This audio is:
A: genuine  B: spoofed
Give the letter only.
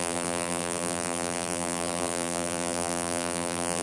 B